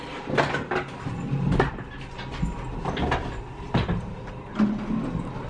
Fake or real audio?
real